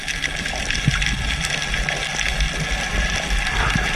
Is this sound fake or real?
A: real